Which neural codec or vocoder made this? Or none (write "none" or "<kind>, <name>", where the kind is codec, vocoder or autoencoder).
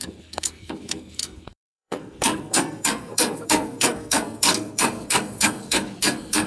codec, SNAC